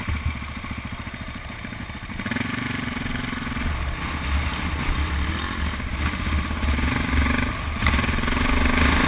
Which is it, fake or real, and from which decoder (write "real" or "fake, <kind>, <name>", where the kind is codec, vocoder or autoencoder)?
real